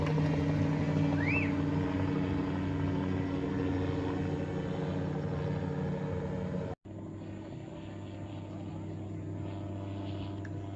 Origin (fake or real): real